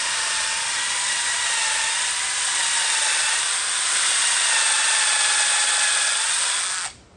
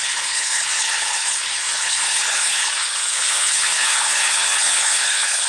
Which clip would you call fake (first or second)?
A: second